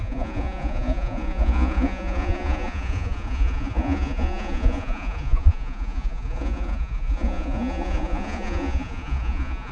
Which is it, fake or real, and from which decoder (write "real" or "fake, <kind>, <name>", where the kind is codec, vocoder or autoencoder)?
fake, vocoder, Vocos